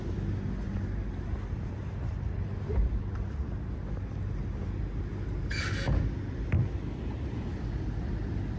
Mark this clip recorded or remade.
recorded